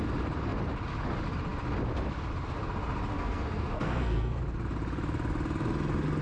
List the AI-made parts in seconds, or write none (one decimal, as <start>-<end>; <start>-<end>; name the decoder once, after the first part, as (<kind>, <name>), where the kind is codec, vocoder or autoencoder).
3.1-4.4 (codec, SNAC)